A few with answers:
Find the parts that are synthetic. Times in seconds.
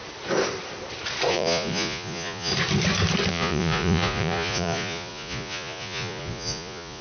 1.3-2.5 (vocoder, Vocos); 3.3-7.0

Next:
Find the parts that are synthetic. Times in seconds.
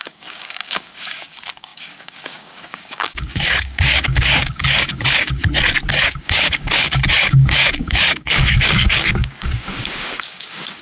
0.0-5.4 (codec, DAC); 5.9-10.8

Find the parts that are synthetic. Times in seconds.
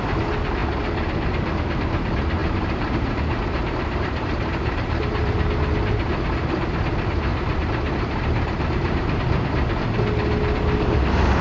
2.4-5.4 (vocoder, BigVGAN v2); 7.3-9.1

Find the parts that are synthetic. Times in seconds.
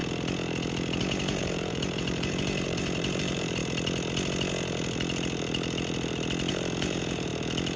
1.0-3.6 (vocoder, BigVGAN v2); 6.5-7.3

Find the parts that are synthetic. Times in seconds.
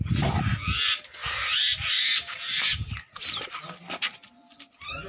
none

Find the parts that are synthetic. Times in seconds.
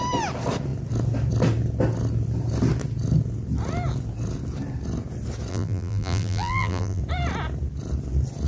5.5-7.0 (vocoder, BigVGAN v2)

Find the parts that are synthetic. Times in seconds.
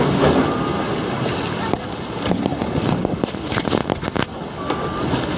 none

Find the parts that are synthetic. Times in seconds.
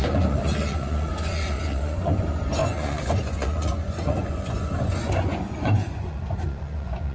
0.0-7.1 (vocoder, Vocos)